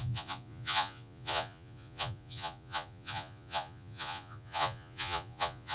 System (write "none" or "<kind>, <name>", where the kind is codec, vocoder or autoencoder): vocoder, Vocos